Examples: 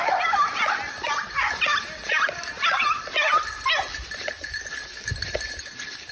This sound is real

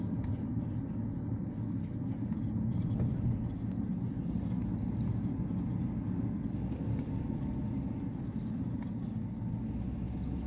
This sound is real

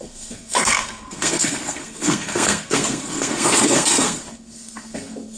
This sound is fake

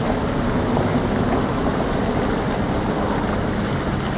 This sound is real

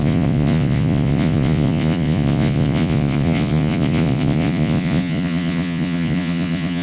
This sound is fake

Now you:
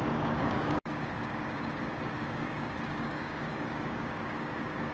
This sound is fake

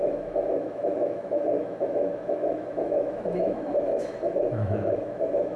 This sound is fake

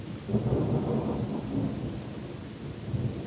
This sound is real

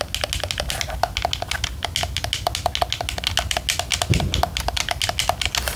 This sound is real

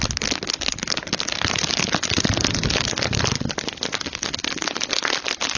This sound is real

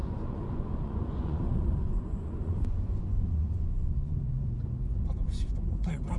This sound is fake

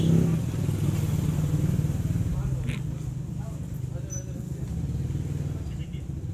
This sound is real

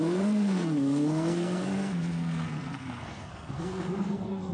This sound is fake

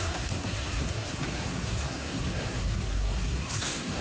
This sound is fake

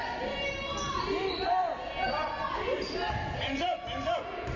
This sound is real